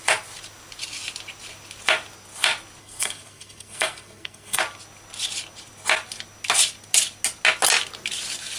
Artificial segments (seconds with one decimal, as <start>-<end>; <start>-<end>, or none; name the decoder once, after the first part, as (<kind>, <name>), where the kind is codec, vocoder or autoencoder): 2.8-4.6 (codec, SNAC)